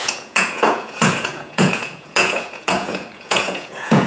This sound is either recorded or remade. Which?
remade